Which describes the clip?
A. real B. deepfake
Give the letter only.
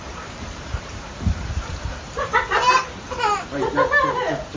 B